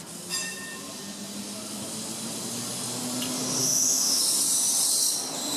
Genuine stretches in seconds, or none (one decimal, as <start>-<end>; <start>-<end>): 0.0-3.6; 4.2-5.6